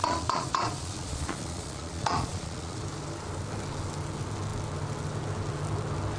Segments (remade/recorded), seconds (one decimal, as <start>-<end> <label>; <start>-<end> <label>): 0.0-2.8 remade; 2.8-6.2 recorded